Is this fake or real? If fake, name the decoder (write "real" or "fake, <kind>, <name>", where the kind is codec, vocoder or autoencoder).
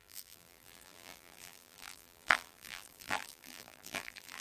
fake, vocoder, BigVGAN v2